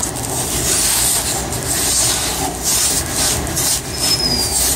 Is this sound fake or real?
real